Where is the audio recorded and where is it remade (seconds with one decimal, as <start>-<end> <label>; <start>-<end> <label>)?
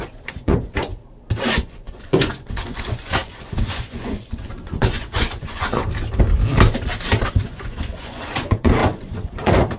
0.0-0.9 remade; 0.9-1.5 recorded; 1.5-5.8 remade; 5.8-7.3 recorded; 7.3-9.8 remade